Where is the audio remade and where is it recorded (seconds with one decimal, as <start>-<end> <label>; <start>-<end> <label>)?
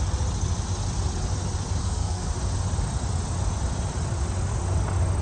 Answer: 0.0-1.8 recorded; 1.8-2.3 remade; 2.3-5.2 recorded